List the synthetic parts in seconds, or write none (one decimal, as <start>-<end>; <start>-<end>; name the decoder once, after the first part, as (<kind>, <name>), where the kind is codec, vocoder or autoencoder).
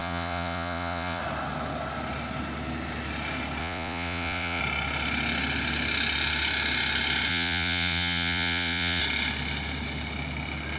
0.0-1.2 (vocoder, Vocos); 3.6-4.6; 7.3-9.0